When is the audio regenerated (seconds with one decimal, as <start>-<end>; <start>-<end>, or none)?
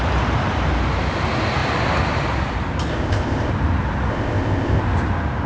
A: 2.9-3.5; 4.1-4.8